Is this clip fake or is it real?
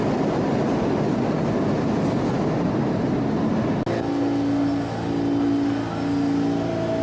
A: real